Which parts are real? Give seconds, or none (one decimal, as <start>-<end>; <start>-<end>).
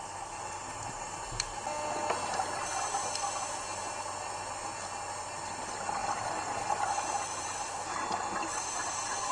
0.0-9.3